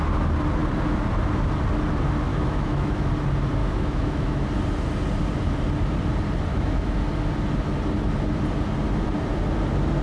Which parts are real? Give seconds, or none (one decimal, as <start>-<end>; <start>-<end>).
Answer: 0.0-2.3; 3.1-3.6; 4.4-6.5; 7.0-10.0